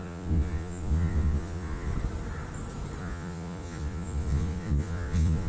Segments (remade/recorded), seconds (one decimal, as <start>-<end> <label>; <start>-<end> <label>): 0.0-1.9 remade; 1.9-3.0 recorded; 3.0-5.5 remade